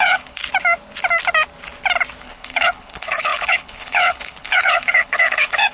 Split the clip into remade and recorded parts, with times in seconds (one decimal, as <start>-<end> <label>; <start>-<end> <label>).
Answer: 0.0-0.4 remade; 0.4-2.2 recorded; 2.2-5.7 remade